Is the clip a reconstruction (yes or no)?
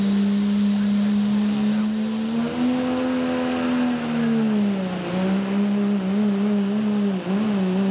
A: no